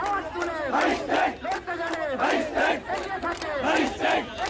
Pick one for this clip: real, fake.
real